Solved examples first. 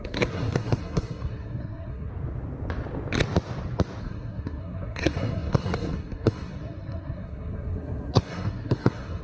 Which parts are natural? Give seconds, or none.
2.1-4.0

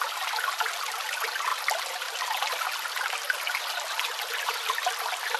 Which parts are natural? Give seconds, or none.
0.0-5.4

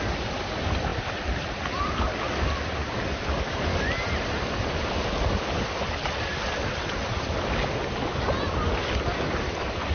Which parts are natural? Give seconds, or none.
0.0-9.9

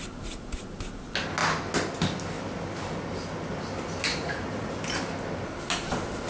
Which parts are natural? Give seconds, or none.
0.0-4.1; 4.8-6.3

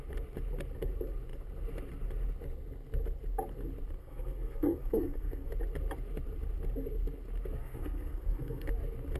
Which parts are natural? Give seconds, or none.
0.0-4.0; 5.5-7.6; 8.7-9.2

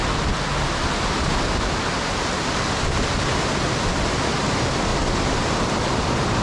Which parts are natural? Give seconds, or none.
0.0-6.4

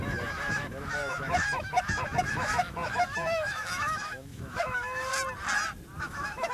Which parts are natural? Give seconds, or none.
5.1-6.0

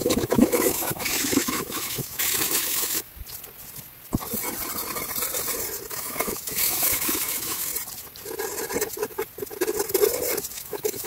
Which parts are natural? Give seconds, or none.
3.1-5.9; 7.7-10.5